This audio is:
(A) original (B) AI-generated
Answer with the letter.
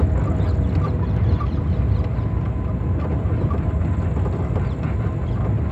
A